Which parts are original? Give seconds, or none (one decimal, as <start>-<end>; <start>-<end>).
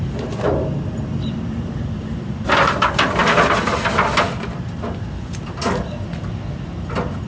0.0-7.3